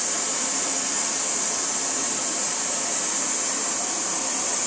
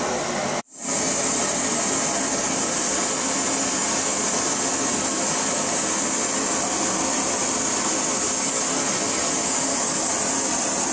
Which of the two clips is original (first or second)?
second